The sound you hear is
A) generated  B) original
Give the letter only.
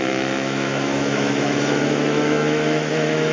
A